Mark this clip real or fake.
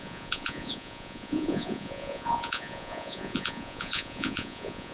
fake